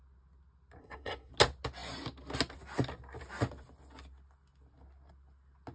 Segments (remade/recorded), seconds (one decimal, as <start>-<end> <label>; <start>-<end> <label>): 0.0-0.8 recorded; 0.8-1.3 remade; 1.3-5.7 recorded